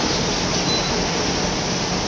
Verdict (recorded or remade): recorded